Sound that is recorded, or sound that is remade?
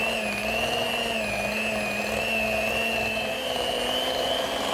recorded